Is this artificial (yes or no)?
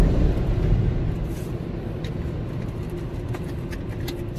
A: no